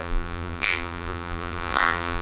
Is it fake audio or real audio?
fake